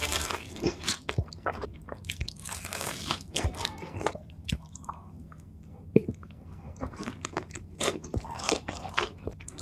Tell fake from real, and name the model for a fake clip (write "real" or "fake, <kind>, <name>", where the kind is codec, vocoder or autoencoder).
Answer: fake, codec, SNAC